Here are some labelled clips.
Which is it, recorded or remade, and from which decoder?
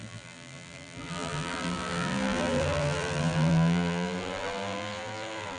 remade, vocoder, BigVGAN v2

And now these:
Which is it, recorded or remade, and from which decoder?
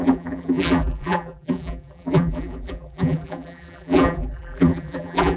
remade, vocoder, BigVGAN v2